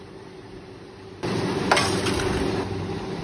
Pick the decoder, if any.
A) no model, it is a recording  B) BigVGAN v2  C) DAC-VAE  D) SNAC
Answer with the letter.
A